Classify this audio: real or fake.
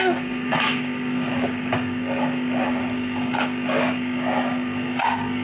fake